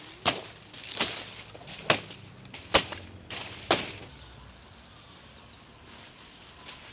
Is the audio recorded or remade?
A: recorded